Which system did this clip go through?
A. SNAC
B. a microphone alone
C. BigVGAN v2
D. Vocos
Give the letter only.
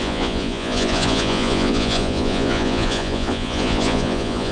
D